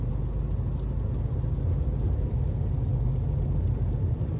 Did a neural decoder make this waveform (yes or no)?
no